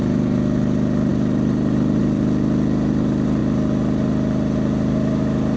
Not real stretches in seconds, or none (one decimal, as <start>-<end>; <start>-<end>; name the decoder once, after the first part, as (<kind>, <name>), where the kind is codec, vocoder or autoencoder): none